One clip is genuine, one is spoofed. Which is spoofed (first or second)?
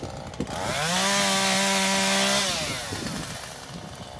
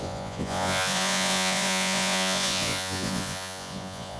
second